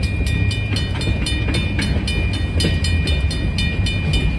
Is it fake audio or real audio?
real